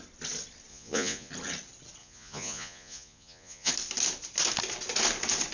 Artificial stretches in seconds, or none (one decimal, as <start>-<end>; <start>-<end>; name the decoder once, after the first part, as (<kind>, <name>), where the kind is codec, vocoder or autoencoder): 0.7-1.3 (vocoder, Vocos); 2.0-3.7